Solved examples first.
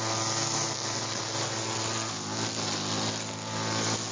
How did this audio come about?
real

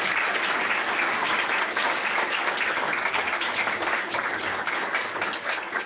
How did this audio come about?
fake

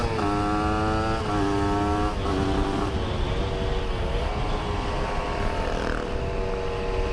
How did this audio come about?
real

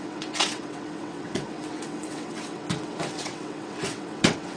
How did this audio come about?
fake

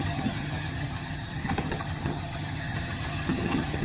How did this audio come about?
fake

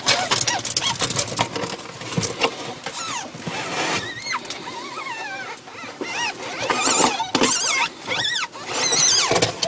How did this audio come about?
real